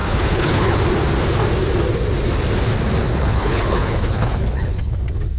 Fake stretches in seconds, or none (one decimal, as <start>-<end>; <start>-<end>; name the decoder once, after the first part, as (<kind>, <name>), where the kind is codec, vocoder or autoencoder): 0.0-0.7 (codec, HILCodec); 3.1-4.9